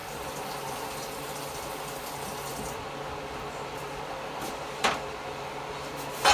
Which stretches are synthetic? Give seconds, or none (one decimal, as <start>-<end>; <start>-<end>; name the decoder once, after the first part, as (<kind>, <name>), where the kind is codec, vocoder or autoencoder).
none